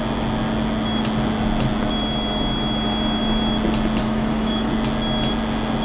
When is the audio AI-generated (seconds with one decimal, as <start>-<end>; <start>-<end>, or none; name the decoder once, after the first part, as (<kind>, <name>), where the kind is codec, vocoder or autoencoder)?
4.0-4.7 (autoencoder, DAC-VAE)